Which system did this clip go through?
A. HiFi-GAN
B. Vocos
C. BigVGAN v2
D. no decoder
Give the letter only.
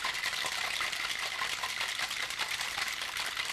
D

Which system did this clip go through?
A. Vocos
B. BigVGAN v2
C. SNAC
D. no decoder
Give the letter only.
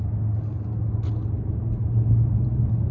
D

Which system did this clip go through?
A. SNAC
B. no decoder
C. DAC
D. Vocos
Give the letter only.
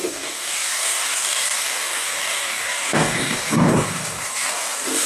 C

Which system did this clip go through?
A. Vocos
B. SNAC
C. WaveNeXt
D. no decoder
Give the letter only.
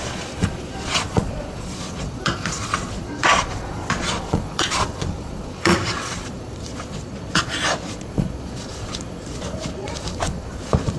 A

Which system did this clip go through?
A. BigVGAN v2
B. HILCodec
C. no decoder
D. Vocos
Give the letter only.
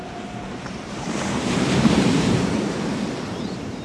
A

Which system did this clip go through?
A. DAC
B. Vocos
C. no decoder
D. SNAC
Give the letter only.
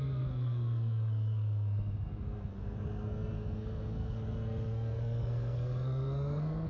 D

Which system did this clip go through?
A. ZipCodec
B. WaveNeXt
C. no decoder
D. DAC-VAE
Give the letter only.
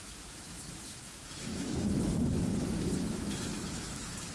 D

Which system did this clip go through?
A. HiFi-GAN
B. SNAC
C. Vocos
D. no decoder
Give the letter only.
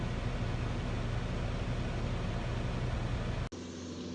D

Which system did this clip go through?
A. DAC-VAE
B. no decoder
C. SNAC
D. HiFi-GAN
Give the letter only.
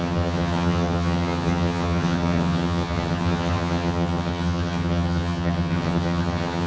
D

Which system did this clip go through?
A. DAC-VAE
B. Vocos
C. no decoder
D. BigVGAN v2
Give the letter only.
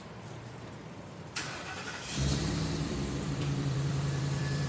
D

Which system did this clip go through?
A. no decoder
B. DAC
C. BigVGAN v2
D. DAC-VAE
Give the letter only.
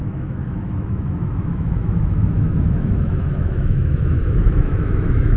D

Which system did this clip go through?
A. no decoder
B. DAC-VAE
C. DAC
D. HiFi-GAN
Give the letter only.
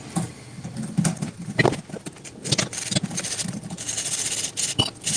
A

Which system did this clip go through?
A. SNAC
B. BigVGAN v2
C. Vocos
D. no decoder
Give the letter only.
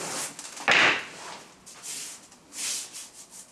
D